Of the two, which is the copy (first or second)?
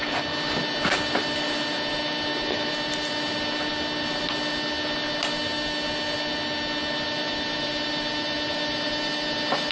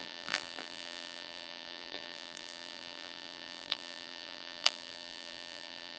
second